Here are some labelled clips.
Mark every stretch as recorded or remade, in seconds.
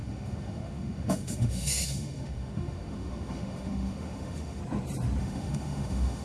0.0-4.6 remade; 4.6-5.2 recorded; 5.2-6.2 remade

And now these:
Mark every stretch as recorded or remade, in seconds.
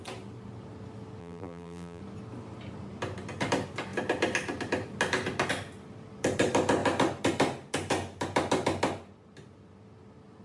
0.0-1.2 recorded; 1.2-2.0 remade; 2.0-10.4 recorded